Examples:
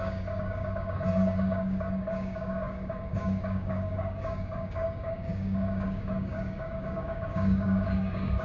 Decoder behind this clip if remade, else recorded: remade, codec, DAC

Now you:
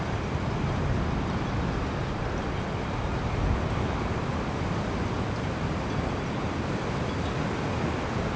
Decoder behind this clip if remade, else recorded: recorded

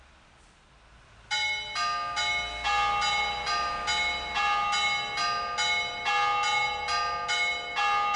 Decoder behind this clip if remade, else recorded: recorded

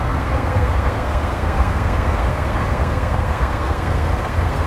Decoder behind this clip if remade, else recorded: remade, codec, SNAC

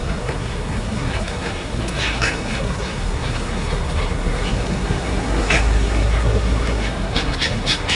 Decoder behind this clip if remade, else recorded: remade, codec, SNAC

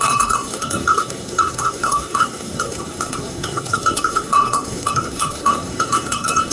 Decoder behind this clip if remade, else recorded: remade, codec, SNAC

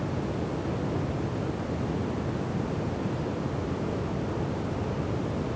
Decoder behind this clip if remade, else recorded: recorded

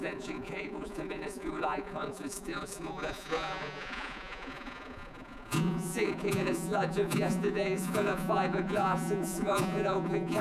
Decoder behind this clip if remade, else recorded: remade, vocoder, Vocos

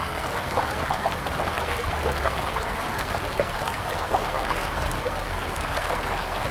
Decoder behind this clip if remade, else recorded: remade, codec, SNAC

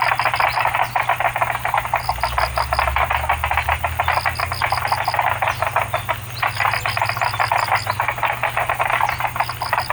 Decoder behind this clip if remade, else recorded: recorded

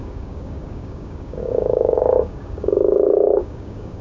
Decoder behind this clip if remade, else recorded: remade, codec, DAC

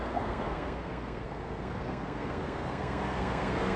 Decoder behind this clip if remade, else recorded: remade, codec, SNAC